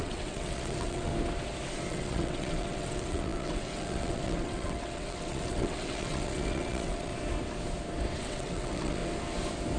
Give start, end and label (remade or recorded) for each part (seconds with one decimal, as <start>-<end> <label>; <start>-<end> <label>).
0.0-1.1 remade; 1.1-1.9 recorded; 1.9-7.1 remade; 7.1-8.2 recorded; 8.2-9.0 remade; 9.0-9.8 recorded